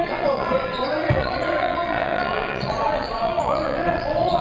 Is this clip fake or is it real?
fake